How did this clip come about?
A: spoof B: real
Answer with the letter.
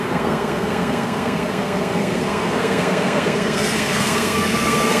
A